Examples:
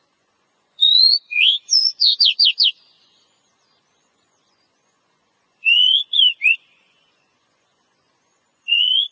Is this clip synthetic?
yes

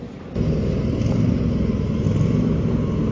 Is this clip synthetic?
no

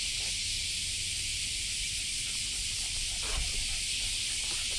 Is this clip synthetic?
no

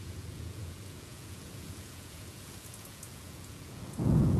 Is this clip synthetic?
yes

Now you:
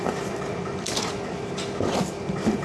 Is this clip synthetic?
no